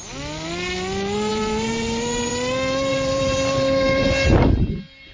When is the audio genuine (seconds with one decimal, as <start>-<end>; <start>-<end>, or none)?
0.0-1.3; 2.3-2.9; 4.5-5.1